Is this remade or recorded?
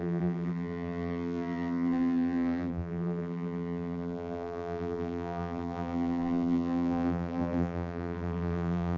remade